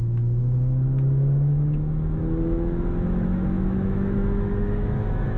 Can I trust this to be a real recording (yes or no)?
no